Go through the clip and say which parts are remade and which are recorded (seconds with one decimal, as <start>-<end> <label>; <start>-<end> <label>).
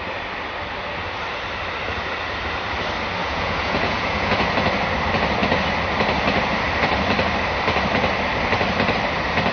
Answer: 0.0-3.2 recorded; 3.2-4.5 remade; 4.5-9.5 recorded